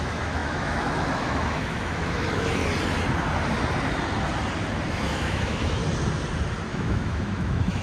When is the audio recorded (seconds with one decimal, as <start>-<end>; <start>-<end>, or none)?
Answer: 2.6-4.9; 5.8-6.7